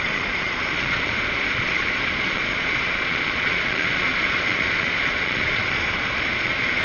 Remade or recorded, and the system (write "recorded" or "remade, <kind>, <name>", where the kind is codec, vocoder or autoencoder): remade, vocoder, Vocos